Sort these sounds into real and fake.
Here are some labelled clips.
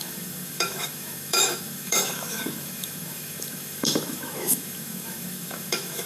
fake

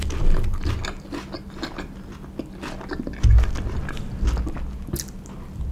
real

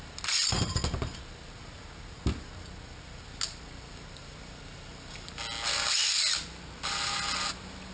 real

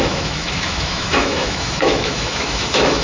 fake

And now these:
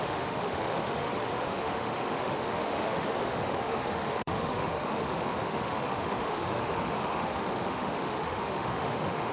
fake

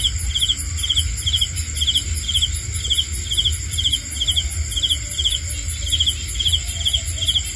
real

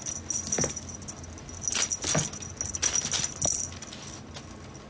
real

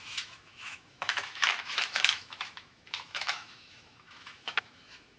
fake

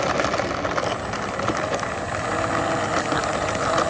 real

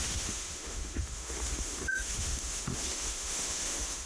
fake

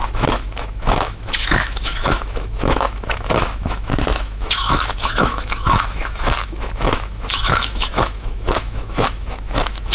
fake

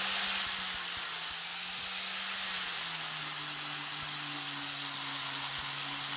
real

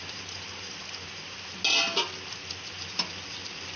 real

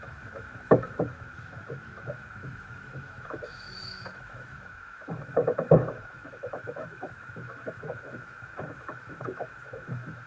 fake